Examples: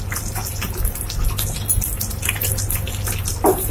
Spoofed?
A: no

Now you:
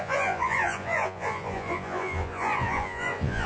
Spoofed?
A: yes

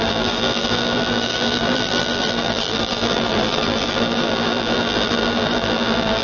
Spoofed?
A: yes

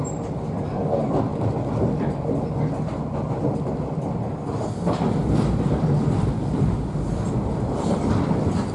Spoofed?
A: no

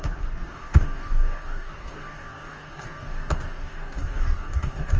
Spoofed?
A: yes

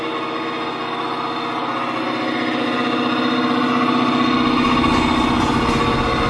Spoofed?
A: no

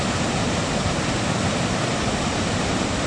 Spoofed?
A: no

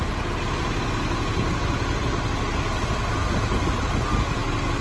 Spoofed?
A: no